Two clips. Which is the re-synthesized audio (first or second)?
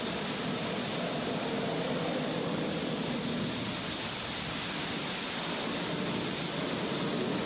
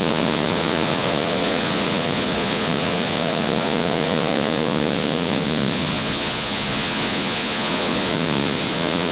second